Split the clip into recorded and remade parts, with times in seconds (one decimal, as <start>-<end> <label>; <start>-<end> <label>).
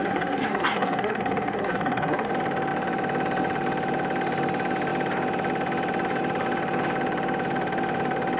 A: 0.0-2.3 remade; 2.3-8.4 recorded